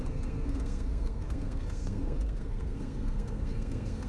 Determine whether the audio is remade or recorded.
remade